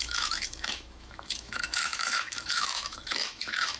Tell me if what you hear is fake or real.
fake